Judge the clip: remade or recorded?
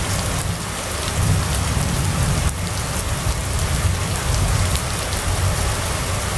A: recorded